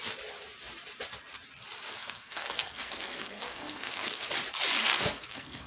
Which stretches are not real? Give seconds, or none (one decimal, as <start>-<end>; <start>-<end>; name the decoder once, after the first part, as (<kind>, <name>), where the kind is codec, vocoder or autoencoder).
2.0-4.3 (codec, SNAC); 4.8-5.7